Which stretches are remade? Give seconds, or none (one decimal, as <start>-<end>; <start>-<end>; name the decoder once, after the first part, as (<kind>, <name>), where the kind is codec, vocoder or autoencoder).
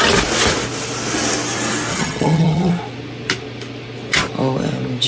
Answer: 1.9-2.7 (vocoder, HiFi-GAN)